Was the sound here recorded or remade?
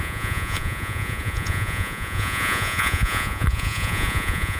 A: remade